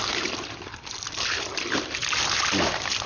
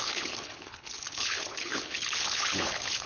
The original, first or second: first